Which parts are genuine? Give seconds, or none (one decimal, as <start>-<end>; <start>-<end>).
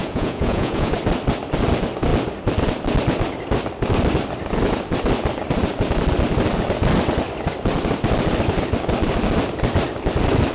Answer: 0.9-10.5